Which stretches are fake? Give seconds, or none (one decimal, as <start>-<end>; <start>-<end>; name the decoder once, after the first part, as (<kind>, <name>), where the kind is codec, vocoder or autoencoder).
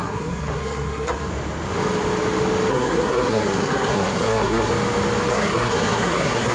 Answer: 0.0-1.3 (codec, SNAC); 2.7-4.7; 5.3-6.5